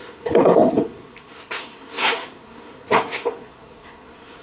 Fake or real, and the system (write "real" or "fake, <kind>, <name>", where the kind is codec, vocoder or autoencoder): fake, codec, SNAC